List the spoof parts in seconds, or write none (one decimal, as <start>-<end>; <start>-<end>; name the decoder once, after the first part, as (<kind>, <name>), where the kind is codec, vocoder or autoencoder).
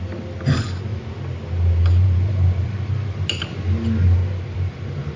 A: 0.9-2.8 (vocoder, BigVGAN v2); 4.2-4.7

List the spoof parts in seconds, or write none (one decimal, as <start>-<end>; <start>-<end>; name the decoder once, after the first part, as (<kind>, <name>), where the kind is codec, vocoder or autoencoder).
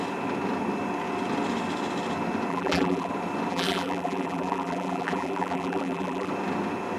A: 2.5-3.1 (vocoder, BigVGAN v2); 3.5-6.3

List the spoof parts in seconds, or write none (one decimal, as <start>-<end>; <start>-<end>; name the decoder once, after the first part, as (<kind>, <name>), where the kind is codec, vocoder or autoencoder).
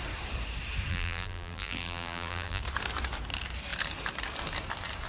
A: 0.9-2.6 (vocoder, BigVGAN v2)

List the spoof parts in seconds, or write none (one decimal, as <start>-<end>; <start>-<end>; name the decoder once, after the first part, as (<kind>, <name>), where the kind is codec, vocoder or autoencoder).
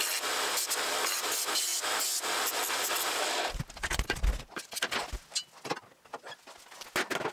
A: none